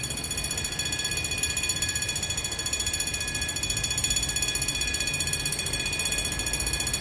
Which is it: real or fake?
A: real